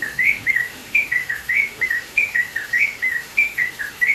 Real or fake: fake